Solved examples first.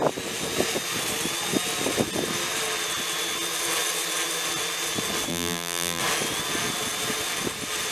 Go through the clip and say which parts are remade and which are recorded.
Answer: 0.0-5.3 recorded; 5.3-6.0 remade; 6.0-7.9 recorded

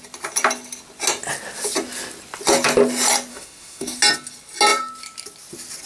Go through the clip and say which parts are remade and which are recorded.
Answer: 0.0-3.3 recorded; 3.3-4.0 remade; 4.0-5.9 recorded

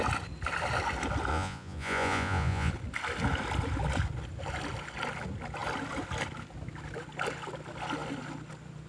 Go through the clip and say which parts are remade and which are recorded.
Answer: 0.0-1.3 recorded; 1.3-2.7 remade; 2.7-8.9 recorded

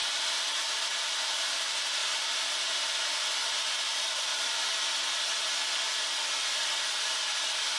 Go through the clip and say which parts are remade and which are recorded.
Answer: 0.0-2.0 remade; 2.0-3.6 recorded; 3.6-4.3 remade; 4.3-7.0 recorded; 7.0-7.8 remade

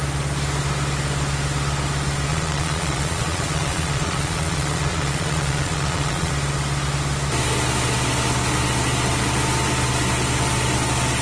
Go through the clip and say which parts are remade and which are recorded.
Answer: 0.0-2.3 recorded; 2.3-6.3 remade; 6.3-11.2 recorded